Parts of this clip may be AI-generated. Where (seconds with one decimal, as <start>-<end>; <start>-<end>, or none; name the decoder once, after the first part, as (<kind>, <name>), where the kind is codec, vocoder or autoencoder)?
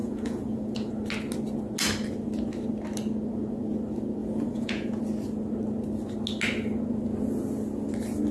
0.0-0.9 (vocoder, Vocos); 4.2-5.0